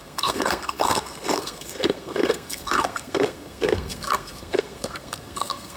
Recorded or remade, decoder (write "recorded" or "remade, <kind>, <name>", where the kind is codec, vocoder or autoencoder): remade, codec, SNAC